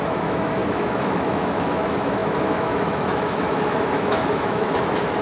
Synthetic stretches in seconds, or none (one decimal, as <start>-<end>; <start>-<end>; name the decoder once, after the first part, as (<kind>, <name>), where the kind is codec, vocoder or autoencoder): 0.0-5.2 (autoencoder, DAC-VAE)